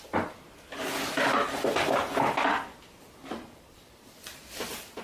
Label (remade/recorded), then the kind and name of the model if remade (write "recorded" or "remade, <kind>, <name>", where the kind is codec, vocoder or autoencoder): recorded